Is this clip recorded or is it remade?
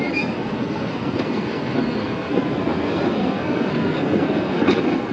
remade